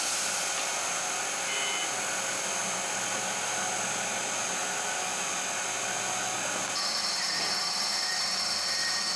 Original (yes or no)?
yes